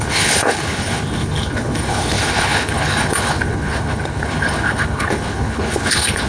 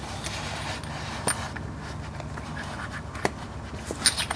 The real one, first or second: second